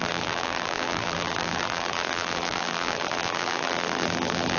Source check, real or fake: fake